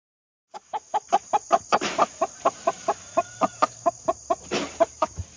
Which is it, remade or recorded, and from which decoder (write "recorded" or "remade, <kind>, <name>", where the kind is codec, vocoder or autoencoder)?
remade, vocoder, BigVGAN v2